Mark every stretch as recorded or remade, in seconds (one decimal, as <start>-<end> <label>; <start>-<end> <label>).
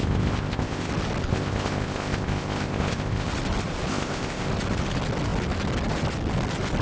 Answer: 0.0-0.9 remade; 0.9-1.3 recorded; 1.3-3.3 remade; 3.3-3.9 recorded; 3.9-4.5 remade; 4.5-6.8 recorded